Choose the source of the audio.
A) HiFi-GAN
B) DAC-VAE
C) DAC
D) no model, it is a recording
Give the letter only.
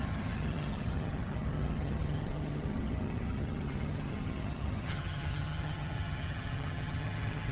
A